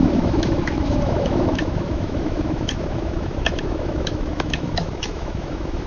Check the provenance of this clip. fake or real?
fake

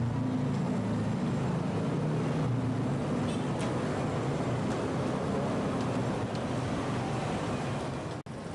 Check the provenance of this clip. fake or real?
real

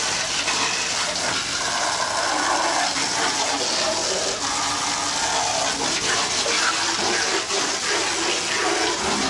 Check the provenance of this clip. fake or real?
real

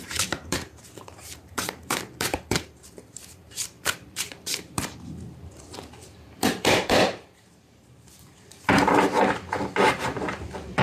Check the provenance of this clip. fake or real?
fake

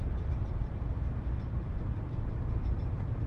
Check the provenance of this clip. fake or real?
fake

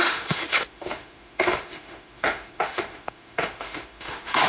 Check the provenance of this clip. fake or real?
fake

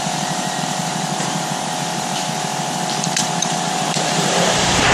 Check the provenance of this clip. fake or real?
fake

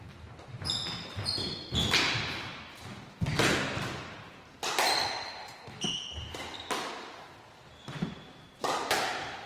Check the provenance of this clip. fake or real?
real